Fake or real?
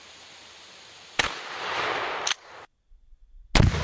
real